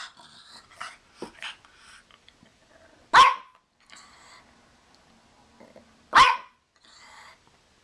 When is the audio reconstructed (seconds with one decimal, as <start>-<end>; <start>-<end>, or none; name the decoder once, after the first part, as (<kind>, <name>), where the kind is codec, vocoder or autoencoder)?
none